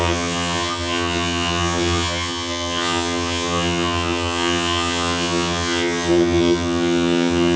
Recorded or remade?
remade